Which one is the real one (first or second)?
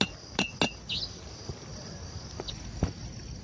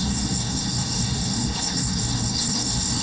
first